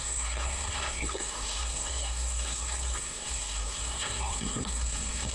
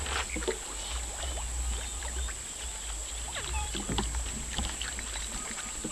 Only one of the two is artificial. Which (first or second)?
first